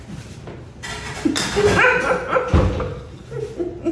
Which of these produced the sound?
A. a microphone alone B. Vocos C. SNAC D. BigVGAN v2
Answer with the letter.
A